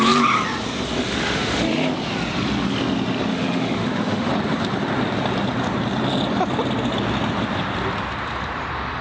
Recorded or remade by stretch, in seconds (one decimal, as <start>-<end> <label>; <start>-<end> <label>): 0.0-1.0 recorded; 1.0-1.9 remade; 1.9-3.3 recorded; 3.3-4.3 remade; 4.3-9.0 recorded